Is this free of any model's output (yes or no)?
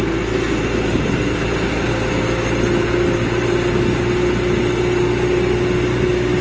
yes